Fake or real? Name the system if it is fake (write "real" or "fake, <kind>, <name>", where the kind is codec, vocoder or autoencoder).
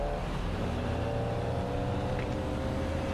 real